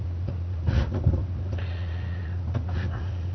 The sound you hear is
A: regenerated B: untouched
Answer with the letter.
A